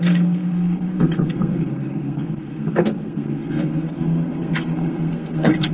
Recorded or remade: remade